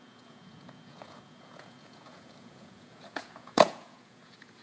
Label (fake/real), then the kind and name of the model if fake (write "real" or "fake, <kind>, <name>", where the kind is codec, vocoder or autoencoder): fake, vocoder, Vocos